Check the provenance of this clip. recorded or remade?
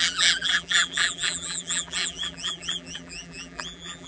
remade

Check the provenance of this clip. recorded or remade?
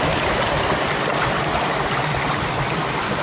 recorded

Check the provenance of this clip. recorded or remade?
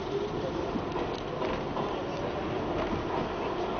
recorded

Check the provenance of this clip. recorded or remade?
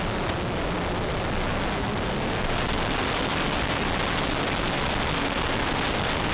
recorded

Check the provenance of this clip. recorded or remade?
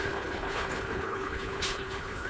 remade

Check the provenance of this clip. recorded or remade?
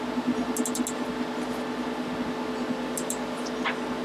recorded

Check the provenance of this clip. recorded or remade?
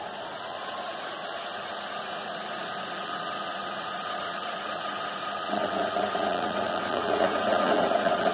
remade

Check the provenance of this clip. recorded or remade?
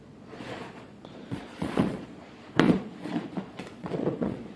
remade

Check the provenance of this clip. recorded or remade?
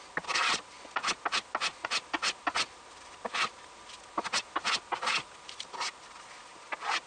recorded